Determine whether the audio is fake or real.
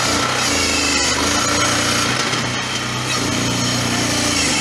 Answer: real